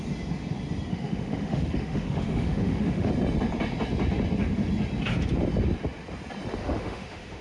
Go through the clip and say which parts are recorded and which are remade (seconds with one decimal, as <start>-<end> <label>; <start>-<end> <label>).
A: 0.0-0.9 recorded; 0.9-3.1 remade; 3.1-6.6 recorded; 6.6-7.4 remade